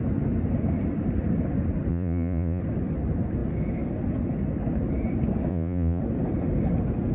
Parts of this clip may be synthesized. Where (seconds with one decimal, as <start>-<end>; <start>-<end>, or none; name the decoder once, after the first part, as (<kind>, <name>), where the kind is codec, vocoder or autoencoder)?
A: 1.9-2.6 (vocoder, Vocos); 5.5-6.0